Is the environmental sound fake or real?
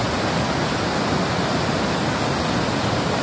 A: real